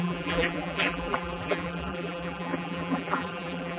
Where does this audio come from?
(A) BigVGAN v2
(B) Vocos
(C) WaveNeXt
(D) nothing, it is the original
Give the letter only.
A